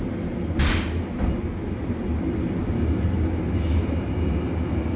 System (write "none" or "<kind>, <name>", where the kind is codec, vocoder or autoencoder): none